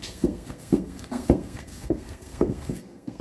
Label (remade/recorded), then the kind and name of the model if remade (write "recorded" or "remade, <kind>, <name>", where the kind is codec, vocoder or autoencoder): remade, codec, SNAC